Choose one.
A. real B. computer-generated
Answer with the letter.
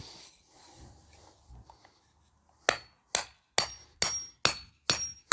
A